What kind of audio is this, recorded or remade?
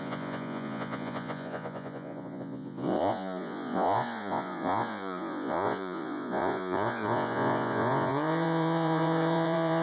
remade